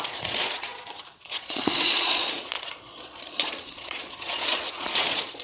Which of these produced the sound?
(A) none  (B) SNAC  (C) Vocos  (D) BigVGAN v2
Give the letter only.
C